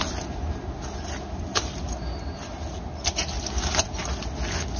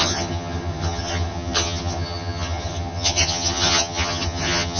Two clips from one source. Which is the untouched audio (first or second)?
first